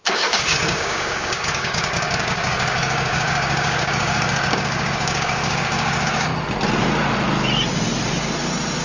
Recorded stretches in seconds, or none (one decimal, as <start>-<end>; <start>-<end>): 6.3-8.8